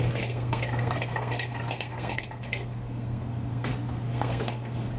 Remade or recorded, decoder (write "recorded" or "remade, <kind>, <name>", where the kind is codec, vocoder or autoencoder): remade, codec, SNAC